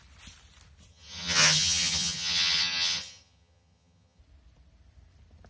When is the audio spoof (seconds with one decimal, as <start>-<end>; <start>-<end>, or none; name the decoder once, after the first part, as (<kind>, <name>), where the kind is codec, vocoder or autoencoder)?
0.9-4.2 (vocoder, HiFi-GAN)